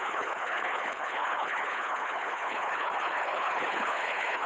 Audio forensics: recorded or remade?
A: remade